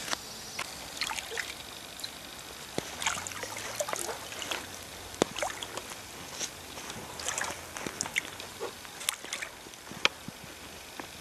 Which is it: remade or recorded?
recorded